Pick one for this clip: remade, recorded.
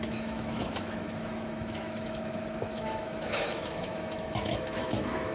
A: remade